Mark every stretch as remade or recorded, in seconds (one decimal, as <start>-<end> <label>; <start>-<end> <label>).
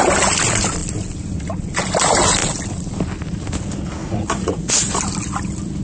0.0-4.0 recorded; 4.0-4.9 remade; 4.9-5.8 recorded